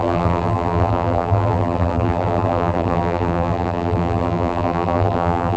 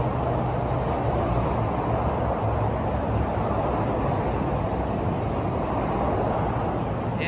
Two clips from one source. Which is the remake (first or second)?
first